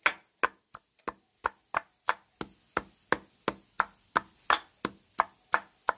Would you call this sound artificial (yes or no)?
no